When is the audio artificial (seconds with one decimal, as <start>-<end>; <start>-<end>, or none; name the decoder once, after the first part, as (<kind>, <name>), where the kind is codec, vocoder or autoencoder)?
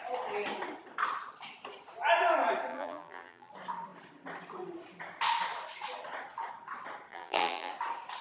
2.7-3.5 (vocoder, BigVGAN v2); 7.1-7.7